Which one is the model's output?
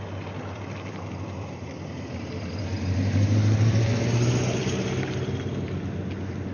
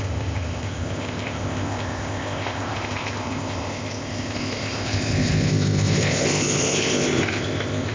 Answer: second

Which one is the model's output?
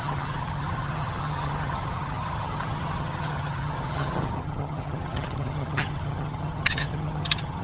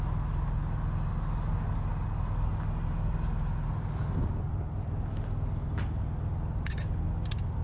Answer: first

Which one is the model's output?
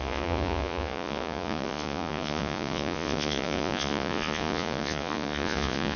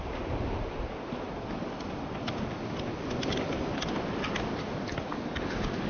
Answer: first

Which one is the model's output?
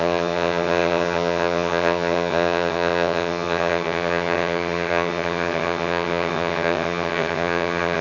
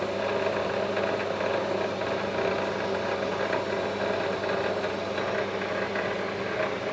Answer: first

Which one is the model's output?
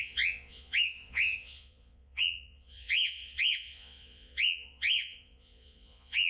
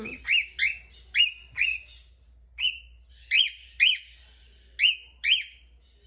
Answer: first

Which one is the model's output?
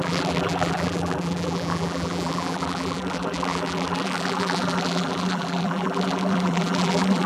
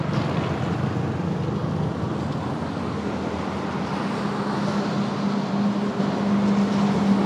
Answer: first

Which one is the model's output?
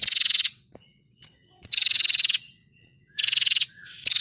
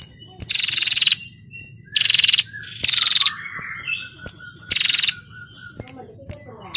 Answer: first